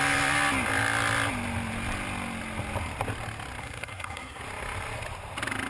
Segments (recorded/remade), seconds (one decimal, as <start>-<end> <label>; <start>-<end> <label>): 0.0-3.6 recorded; 3.6-4.4 remade; 4.4-5.7 recorded